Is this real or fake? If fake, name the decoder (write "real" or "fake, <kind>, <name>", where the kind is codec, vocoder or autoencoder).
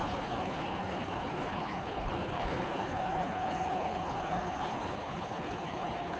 fake, codec, HILCodec